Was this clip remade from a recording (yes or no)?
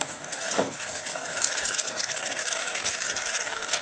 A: yes